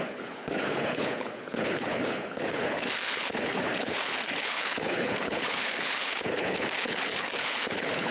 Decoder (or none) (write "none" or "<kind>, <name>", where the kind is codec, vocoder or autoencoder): codec, HILCodec